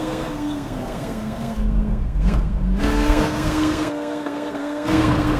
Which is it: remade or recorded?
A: remade